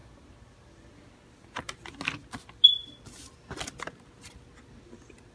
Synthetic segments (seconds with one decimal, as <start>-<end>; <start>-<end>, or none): none